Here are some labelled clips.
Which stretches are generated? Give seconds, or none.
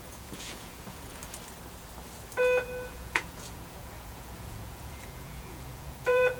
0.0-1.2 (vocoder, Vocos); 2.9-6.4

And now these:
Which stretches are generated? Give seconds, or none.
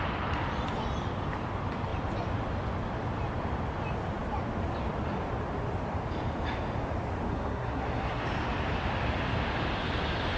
7.3-8.2 (codec, SNAC)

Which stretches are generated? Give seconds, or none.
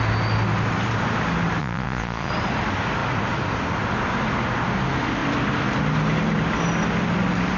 1.6-2.3 (vocoder, Vocos)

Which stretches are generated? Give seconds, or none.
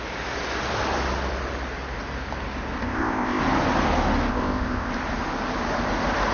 2.8-3.4 (codec, ZipCodec); 4.3-4.9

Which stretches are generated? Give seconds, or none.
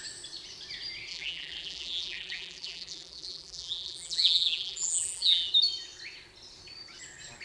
1.1-5.5 (vocoder, BigVGAN v2)